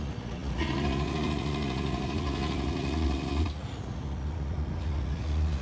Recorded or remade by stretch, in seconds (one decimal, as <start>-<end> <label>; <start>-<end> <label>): 0.0-5.6 remade

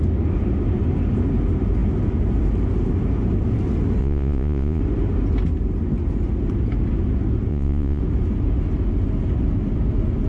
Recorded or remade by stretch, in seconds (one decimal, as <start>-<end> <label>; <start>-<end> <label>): 0.0-4.0 recorded; 4.0-4.8 remade; 4.8-7.5 recorded; 7.5-8.0 remade; 8.0-10.3 recorded

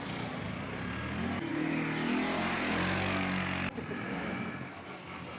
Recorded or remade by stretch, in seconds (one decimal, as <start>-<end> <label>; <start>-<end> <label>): 0.0-5.4 recorded